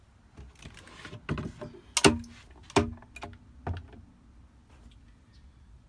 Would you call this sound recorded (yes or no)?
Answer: yes